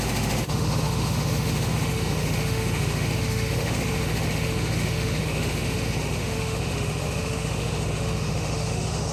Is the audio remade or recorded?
remade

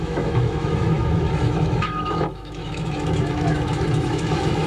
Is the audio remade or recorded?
remade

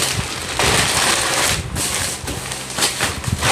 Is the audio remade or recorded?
recorded